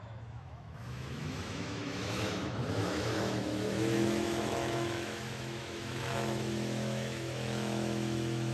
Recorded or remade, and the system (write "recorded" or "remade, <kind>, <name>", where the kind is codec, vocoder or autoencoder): remade, autoencoder, DAC-VAE